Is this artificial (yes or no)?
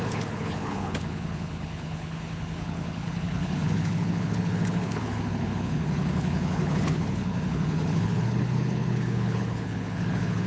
yes